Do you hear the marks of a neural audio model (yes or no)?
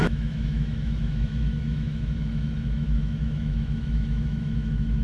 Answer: yes